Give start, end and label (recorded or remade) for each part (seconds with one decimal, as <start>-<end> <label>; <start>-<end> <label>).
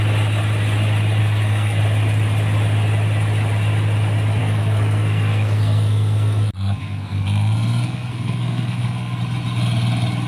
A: 0.0-1.2 recorded; 1.2-1.8 remade; 1.8-4.4 recorded; 4.4-9.2 remade; 9.2-10.3 recorded